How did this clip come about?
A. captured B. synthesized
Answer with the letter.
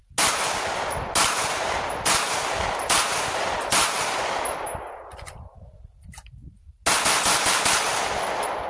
A